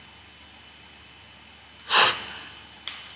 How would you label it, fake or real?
real